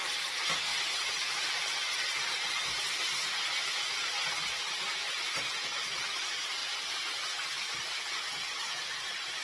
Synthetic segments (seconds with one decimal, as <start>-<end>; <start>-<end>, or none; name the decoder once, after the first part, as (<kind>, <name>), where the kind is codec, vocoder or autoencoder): none